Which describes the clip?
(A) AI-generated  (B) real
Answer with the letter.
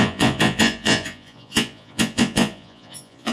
A